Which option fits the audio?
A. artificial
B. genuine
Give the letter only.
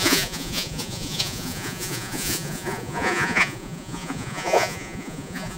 A